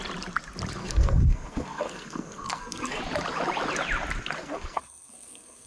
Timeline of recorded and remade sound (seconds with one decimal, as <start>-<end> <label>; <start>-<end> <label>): 0.0-0.8 recorded; 0.8-3.0 remade; 3.0-4.4 recorded; 4.4-5.7 remade